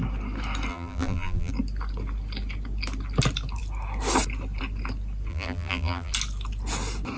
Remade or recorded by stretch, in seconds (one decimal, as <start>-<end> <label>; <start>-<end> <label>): 0.0-0.7 recorded; 0.7-1.5 remade; 1.5-5.3 recorded; 5.3-6.1 remade; 6.1-7.2 recorded